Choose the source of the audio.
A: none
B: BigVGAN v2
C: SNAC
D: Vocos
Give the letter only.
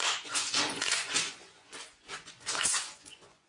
D